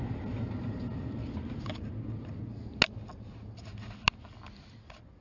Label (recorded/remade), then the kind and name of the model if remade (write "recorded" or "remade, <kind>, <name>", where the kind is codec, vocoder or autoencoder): recorded